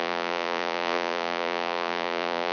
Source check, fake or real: fake